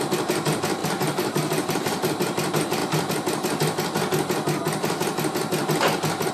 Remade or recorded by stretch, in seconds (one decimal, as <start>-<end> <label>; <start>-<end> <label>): 0.0-2.8 remade; 2.8-6.3 recorded